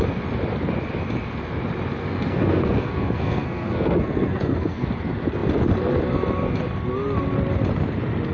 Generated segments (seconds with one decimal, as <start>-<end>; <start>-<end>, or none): 2.0-4.9

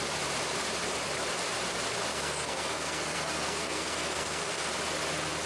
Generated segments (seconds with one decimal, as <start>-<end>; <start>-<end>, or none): 2.1-4.7